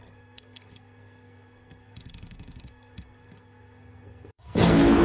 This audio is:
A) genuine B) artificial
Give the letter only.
B